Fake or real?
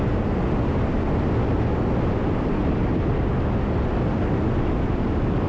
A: real